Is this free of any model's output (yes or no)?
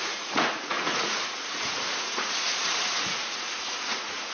no